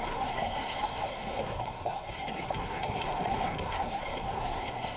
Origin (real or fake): fake